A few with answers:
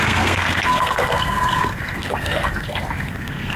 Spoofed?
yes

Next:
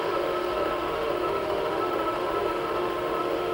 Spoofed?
yes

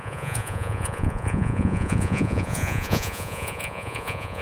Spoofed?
yes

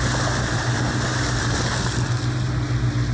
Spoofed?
no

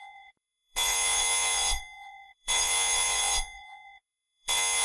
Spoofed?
yes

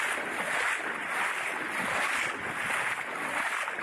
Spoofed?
no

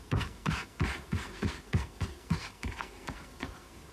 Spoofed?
yes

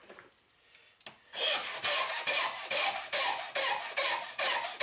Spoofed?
no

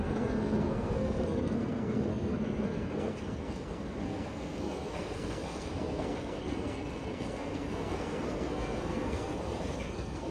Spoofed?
yes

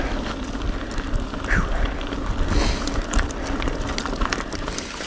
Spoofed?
no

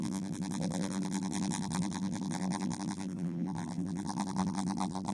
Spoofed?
yes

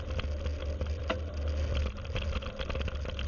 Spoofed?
no